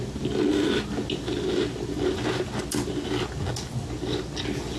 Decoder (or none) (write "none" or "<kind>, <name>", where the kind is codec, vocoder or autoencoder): none